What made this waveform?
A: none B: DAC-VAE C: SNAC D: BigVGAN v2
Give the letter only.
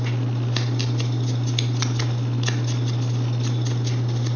A